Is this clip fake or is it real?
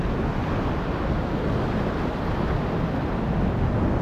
real